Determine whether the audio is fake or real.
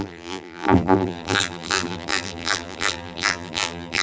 fake